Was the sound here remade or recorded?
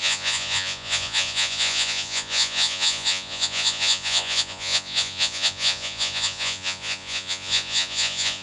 remade